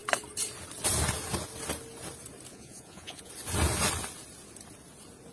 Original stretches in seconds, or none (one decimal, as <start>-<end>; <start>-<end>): 0.0-2.5; 3.3-5.3